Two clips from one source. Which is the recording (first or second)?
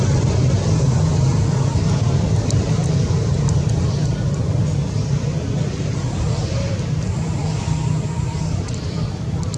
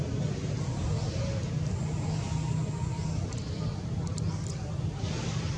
second